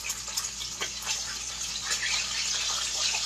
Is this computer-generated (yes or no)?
no